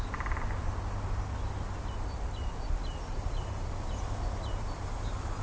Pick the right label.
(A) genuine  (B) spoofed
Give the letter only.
A